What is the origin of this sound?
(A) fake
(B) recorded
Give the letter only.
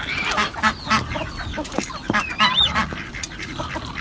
B